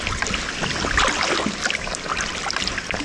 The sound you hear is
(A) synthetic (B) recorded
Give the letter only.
B